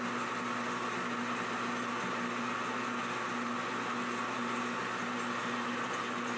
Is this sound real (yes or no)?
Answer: yes